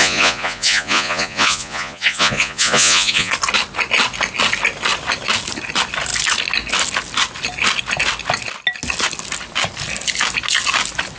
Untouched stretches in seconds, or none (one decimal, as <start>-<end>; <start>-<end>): 3.3-11.2